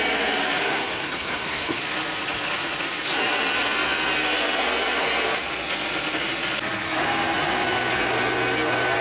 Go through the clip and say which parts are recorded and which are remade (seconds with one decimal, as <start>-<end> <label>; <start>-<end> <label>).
0.0-0.6 recorded; 0.6-1.8 remade; 1.8-9.0 recorded